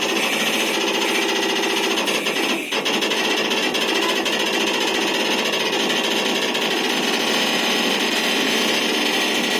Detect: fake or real real